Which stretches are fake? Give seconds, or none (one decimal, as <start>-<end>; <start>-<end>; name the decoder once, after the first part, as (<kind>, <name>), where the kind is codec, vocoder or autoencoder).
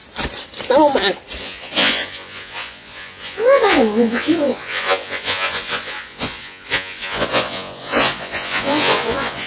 1.4-9.5 (vocoder, Vocos)